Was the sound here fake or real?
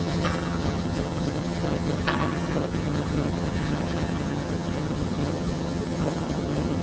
fake